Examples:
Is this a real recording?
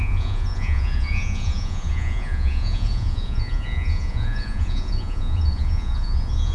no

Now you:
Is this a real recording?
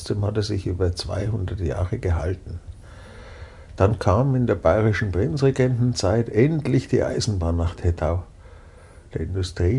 yes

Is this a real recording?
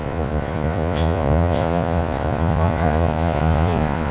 no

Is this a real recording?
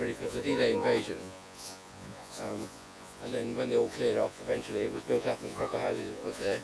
no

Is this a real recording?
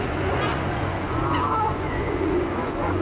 no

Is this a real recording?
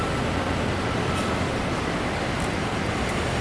yes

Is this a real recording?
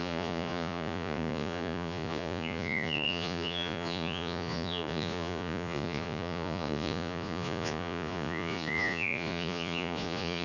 no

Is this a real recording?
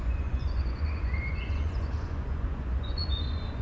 no